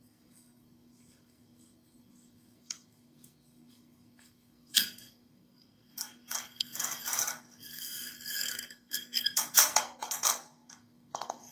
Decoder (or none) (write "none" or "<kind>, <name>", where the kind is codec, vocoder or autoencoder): codec, SNAC